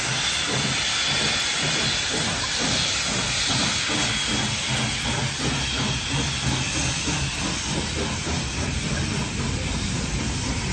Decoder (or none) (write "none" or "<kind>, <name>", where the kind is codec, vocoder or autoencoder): none